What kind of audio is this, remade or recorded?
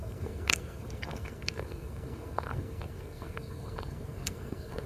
remade